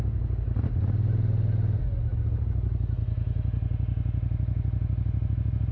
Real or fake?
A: real